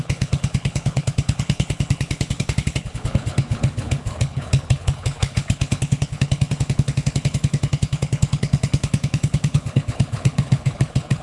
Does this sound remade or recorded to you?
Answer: remade